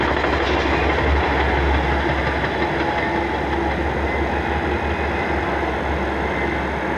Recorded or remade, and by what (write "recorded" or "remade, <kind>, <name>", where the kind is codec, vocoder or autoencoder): recorded